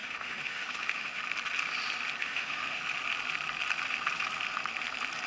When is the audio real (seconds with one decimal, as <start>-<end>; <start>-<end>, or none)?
1.2-2.2; 2.8-5.3